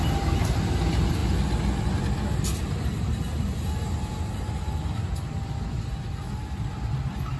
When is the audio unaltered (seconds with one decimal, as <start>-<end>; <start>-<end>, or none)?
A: 0.0-7.4